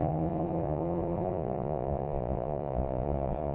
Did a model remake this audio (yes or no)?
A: yes